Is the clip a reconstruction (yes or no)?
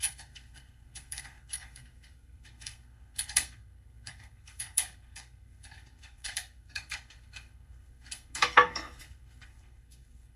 yes